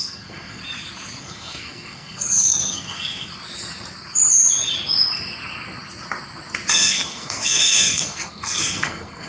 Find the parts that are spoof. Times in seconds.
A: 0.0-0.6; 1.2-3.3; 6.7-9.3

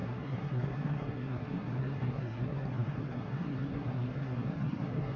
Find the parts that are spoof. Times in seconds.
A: 0.0-5.2

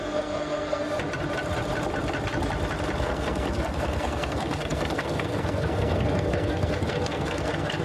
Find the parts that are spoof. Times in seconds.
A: 0.0-0.8; 3.0-7.8

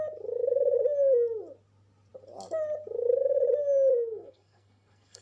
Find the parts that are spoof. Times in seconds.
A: 3.9-5.2